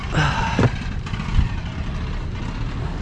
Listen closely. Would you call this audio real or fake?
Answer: real